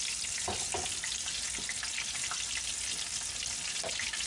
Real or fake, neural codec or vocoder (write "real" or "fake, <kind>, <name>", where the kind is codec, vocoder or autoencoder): real